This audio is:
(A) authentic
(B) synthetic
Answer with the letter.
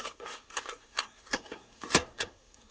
B